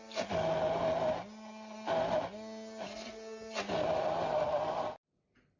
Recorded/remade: recorded